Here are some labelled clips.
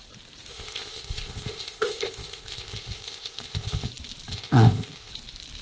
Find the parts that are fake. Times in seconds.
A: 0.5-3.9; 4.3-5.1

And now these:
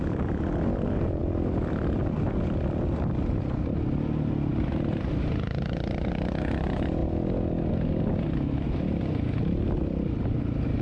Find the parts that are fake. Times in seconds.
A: 1.2-2.0; 4.5-5.1; 7.0-7.7